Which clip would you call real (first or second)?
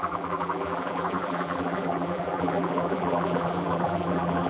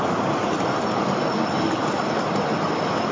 second